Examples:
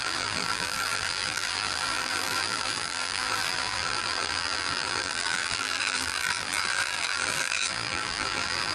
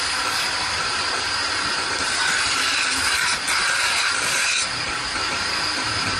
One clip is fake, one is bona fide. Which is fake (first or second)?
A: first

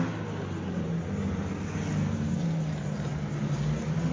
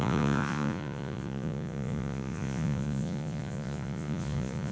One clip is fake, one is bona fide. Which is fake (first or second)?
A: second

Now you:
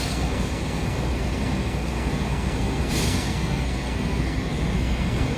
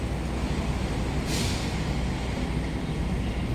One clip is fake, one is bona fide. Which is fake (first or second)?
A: first